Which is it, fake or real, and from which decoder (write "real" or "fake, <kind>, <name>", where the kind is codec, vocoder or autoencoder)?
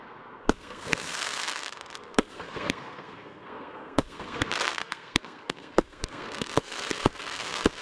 fake, codec, SNAC